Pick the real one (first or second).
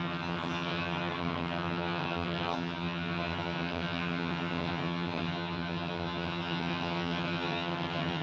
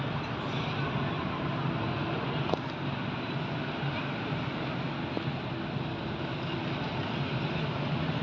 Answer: second